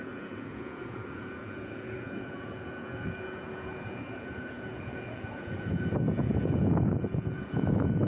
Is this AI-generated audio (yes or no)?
yes